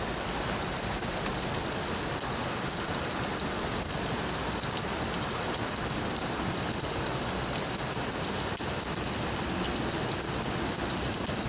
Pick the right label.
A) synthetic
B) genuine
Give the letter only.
B